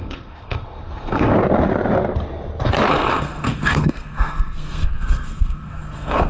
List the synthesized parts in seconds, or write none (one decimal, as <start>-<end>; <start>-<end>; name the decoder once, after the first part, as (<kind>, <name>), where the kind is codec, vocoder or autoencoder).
0.0-1.3 (codec, SNAC); 2.9-6.3